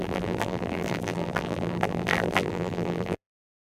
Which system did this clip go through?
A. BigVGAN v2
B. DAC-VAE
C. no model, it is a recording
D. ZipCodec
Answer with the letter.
A